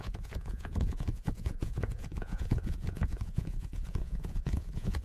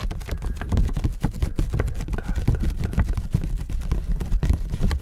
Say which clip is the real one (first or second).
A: second